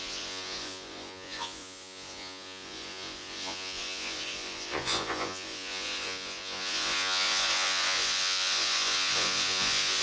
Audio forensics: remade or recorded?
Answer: remade